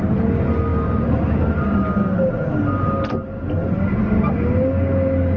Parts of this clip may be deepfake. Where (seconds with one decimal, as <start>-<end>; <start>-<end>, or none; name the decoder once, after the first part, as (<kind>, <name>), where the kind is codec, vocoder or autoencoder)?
none